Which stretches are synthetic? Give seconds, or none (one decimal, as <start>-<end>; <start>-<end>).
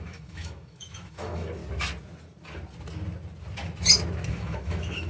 0.0-1.6; 4.3-5.1